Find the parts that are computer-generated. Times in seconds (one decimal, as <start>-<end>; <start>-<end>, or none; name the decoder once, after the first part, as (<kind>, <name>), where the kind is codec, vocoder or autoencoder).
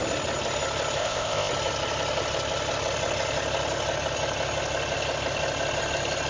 1.0-1.5 (codec, ZipCodec)